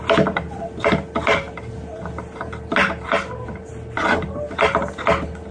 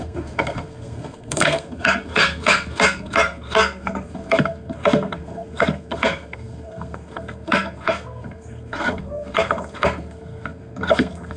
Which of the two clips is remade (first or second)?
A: second